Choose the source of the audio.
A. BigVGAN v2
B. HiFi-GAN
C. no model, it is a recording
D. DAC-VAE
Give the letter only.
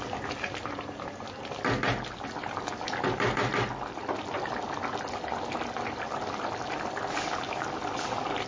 C